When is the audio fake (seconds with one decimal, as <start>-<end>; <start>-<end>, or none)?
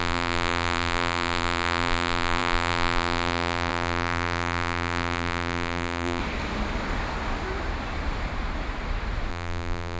0.0-6.2; 9.3-10.0